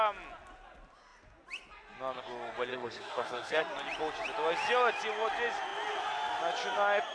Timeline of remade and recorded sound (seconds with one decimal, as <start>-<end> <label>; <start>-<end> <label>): 0.0-2.7 recorded; 2.7-3.6 remade; 3.6-7.1 recorded

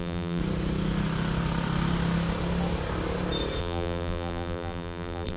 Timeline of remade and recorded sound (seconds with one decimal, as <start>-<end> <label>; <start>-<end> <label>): 0.0-0.4 remade; 0.4-3.6 recorded; 3.6-5.4 remade

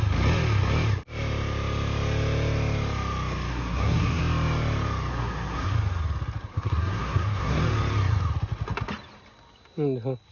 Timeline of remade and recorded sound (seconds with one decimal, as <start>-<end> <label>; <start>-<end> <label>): 0.0-3.5 recorded; 3.5-4.2 remade; 4.2-5.1 recorded; 5.1-5.7 remade; 5.7-6.5 recorded; 6.5-7.6 remade; 7.6-10.3 recorded

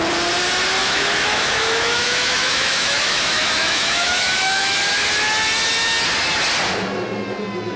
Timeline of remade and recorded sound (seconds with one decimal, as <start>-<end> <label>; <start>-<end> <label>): 0.0-0.8 recorded; 0.8-4.8 remade; 4.8-7.8 recorded